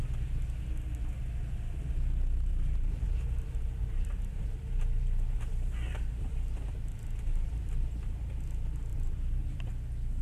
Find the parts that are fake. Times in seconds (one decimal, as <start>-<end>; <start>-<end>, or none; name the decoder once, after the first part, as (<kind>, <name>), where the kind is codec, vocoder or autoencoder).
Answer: 2.5-6.7 (vocoder, BigVGAN v2); 8.9-9.7